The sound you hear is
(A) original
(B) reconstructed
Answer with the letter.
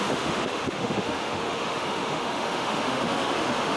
B